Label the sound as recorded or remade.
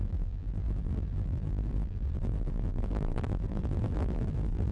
remade